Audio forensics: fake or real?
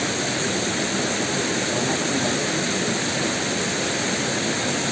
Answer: real